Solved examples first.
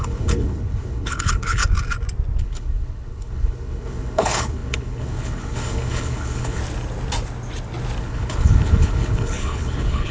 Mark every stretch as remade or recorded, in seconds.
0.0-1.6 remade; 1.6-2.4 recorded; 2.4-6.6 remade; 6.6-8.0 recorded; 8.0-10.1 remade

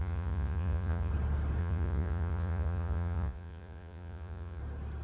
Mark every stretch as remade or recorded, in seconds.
0.0-1.1 remade; 1.1-1.6 recorded; 1.6-4.6 remade; 4.6-5.0 recorded

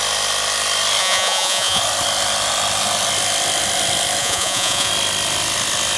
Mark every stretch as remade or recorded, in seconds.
0.0-1.0 recorded; 1.0-1.8 remade; 1.8-4.2 recorded; 4.2-4.9 remade; 4.9-6.0 recorded

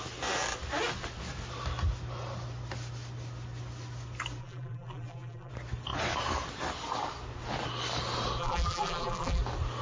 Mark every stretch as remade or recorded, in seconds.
0.0-4.4 recorded; 4.4-5.5 remade; 5.5-8.4 recorded; 8.4-9.4 remade; 9.4-9.8 recorded

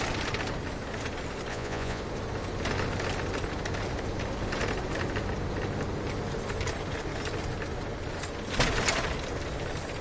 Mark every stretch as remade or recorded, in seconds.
0.0-1.5 recorded; 1.5-2.0 remade; 2.0-10.0 recorded

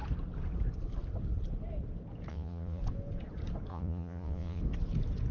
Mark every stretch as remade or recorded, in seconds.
0.0-2.3 recorded; 2.3-2.8 remade; 2.8-3.7 recorded; 3.7-4.6 remade; 4.6-5.3 recorded